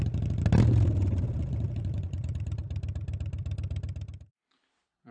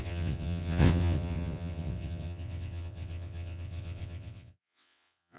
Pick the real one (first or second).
first